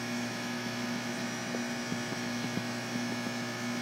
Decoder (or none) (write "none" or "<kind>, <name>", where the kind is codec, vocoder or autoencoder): autoencoder, DAC-VAE